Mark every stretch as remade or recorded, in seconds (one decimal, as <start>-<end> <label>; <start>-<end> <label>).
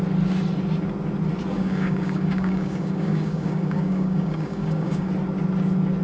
0.0-1.5 recorded; 1.5-5.1 remade; 5.1-6.0 recorded